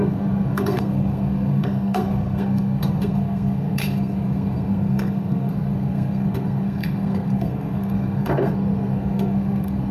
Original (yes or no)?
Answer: no